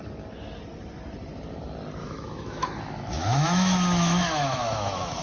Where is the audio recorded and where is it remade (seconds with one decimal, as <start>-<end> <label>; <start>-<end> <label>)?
0.0-2.0 recorded; 2.0-5.2 remade